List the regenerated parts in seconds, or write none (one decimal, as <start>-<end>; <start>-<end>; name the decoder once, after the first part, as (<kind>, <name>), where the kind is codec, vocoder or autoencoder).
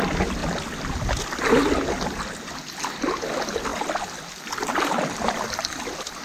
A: none